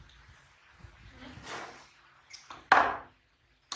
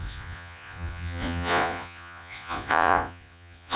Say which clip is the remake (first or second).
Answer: second